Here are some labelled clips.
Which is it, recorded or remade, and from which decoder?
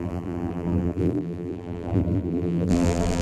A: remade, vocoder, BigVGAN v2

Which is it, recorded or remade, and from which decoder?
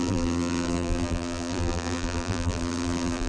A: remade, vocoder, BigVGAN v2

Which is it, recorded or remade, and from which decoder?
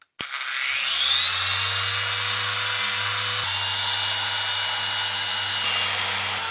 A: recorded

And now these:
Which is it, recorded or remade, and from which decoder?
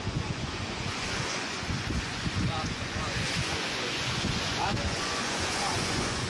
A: remade, vocoder, Vocos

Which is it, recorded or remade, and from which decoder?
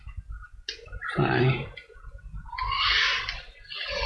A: recorded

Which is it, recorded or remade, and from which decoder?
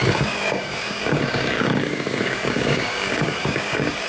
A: remade, codec, DAC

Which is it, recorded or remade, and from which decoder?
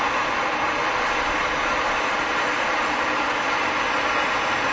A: recorded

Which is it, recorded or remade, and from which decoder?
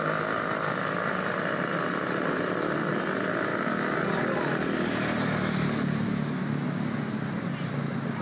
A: recorded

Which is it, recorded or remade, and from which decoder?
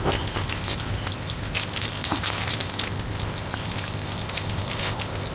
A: remade, codec, ZipCodec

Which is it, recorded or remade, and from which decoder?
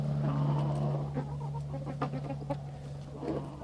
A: recorded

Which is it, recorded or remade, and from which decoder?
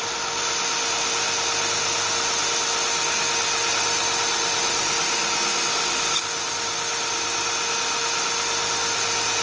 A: recorded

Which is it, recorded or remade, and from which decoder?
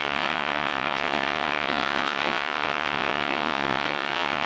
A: remade, vocoder, WaveNeXt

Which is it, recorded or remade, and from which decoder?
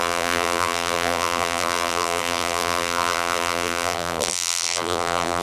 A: remade, vocoder, BigVGAN v2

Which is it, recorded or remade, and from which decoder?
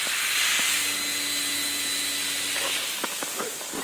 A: recorded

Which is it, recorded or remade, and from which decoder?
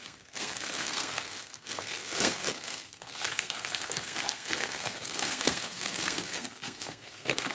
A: remade, codec, SNAC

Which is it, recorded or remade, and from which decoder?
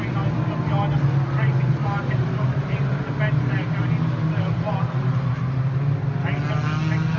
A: recorded